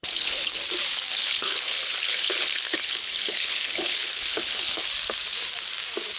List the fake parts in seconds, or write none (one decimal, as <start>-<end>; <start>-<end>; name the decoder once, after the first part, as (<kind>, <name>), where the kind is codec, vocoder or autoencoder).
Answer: 0.0-0.6 (codec, HILCodec); 1.1-4.8